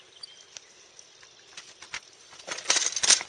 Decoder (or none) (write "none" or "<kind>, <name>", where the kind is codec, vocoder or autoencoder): none